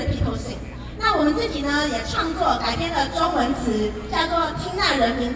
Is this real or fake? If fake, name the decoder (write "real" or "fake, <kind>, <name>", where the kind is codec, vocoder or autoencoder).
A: real